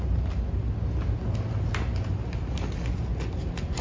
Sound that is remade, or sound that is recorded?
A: recorded